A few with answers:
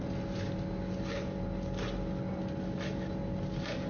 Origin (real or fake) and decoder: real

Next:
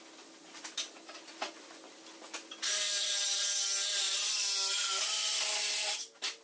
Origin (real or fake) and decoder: real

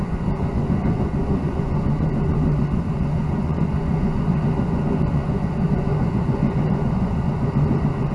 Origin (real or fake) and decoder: fake, vocoder, Vocos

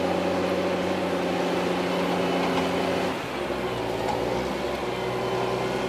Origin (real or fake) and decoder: real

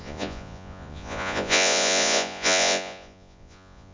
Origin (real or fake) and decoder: fake, vocoder, Vocos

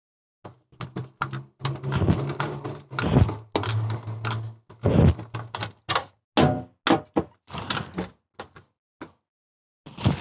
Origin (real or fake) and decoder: real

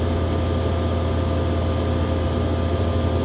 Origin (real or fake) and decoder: real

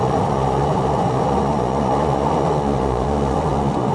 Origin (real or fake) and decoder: fake, vocoder, Vocos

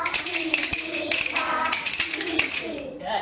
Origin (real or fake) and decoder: fake, vocoder, Vocos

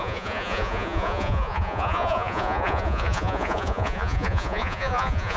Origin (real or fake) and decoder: fake, vocoder, Vocos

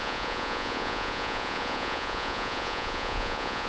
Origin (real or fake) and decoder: fake, vocoder, Vocos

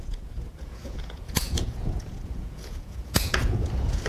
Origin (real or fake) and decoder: fake, vocoder, Vocos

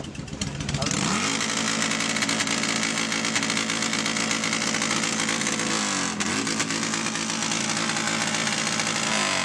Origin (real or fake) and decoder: real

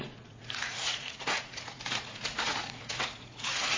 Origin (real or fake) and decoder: fake, vocoder, Vocos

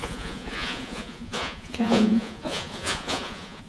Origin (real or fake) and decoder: fake, vocoder, Vocos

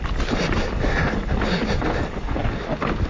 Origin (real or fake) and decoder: real